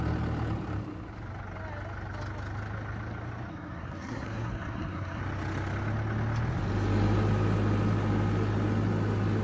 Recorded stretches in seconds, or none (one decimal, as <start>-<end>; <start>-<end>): 0.0-3.5; 5.2-9.4